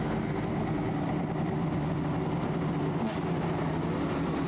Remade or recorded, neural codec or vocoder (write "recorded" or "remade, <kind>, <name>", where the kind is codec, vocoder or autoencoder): recorded